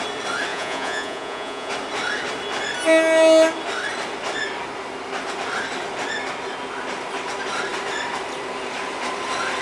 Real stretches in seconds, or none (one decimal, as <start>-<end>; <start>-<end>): 0.0-0.5; 1.7-9.6